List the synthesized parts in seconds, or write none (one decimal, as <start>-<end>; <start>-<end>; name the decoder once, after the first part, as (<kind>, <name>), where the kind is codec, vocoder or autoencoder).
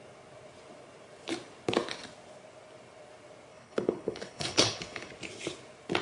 3.5-5.1 (codec, HILCodec)